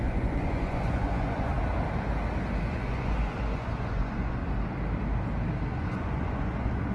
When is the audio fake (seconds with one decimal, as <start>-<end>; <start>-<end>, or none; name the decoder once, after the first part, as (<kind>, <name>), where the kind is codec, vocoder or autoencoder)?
0.0-1.5 (vocoder, Vocos); 2.7-4.4; 5.7-6.9